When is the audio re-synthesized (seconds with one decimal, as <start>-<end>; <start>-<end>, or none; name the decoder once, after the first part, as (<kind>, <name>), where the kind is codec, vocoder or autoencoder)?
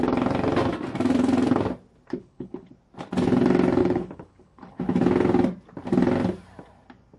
2.2-2.7 (codec, HILCodec); 3.8-4.8